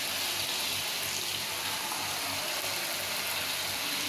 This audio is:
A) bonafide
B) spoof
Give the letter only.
A